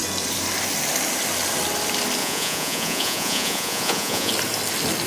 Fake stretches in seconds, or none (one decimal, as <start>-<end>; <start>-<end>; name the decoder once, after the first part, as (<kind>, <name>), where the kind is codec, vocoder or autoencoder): 2.2-4.3 (vocoder, Vocos)